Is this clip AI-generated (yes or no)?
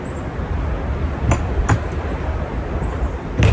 no